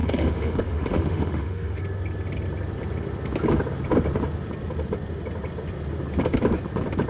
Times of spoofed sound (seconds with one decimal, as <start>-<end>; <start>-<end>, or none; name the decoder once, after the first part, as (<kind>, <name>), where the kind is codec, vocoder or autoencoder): 0.0-1.8 (autoencoder, DAC-VAE)